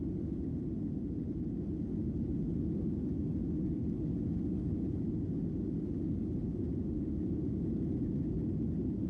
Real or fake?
real